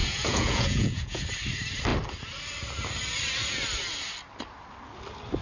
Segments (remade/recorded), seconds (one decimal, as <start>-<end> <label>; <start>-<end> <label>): 0.0-1.2 remade; 1.2-5.4 recorded